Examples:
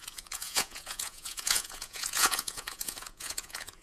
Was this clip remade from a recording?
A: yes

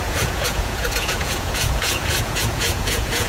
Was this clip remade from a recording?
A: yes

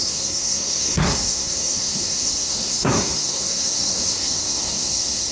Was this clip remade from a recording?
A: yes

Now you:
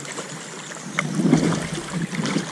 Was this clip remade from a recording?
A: no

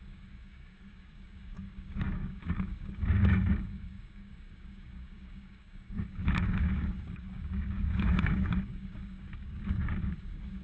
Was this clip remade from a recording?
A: yes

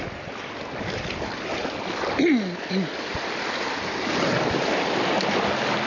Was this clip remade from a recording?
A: no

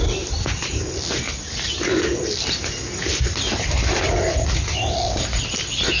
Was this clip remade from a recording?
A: no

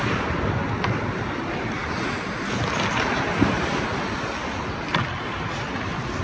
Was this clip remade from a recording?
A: no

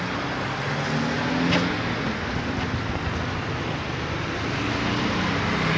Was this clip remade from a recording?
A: no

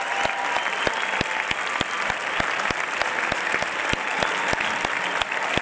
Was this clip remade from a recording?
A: no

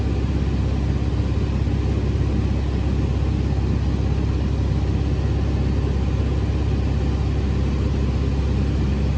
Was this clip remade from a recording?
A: no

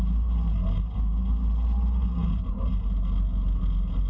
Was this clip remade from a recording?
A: no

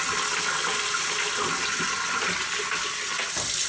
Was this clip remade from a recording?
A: no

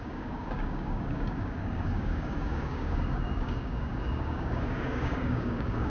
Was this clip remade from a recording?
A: yes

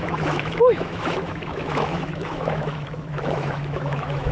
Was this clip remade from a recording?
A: yes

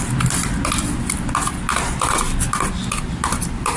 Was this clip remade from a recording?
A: no